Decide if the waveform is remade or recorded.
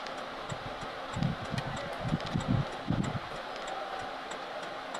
recorded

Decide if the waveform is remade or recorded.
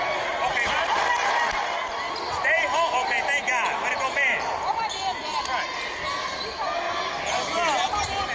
recorded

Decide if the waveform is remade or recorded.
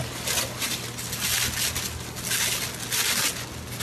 recorded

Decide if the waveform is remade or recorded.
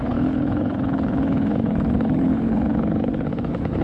remade